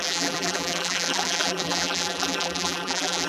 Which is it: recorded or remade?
remade